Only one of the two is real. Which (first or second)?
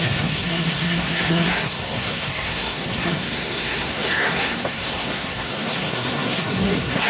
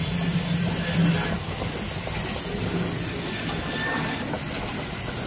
second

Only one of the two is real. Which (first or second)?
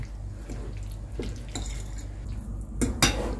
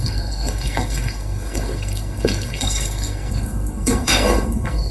first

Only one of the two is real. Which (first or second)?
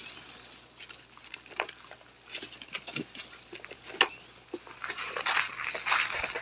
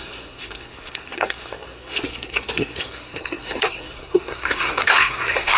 first